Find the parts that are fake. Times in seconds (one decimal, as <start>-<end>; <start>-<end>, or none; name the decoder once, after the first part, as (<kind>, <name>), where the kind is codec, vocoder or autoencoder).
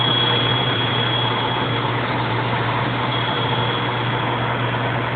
0.5-3.6 (vocoder, BigVGAN v2)